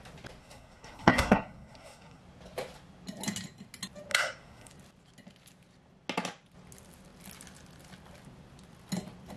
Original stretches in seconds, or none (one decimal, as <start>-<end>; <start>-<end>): 0.0-0.4; 2.2-4.1; 4.7-9.4